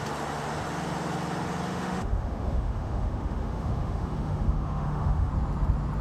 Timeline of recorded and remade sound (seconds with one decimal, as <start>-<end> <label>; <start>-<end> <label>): 0.0-1.7 recorded; 1.7-5.3 remade; 5.3-6.0 recorded